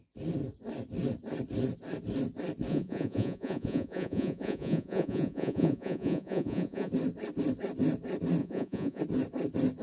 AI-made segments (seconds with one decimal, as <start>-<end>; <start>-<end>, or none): 2.7-6.9; 8.4-9.0